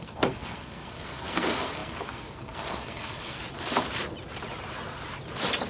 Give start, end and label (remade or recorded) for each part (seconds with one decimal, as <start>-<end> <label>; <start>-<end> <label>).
0.0-3.4 remade; 3.4-5.7 recorded